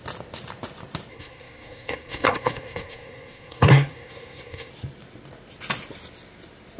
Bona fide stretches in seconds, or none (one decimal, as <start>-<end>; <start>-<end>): 0.0-1.1; 4.7-6.8